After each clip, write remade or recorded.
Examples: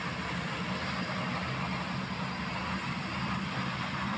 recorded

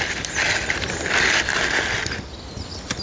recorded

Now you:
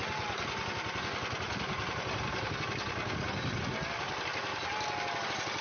recorded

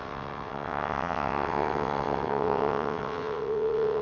remade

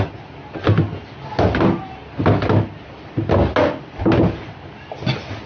recorded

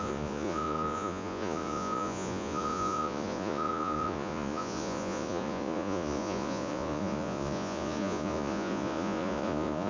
remade